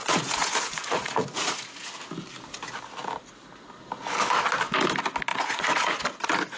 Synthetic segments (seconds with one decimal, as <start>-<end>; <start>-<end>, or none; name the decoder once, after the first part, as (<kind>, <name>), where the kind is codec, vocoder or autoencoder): 0.0-1.9 (vocoder, Vocos); 5.3-6.0